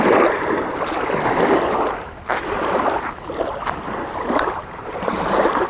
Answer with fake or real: real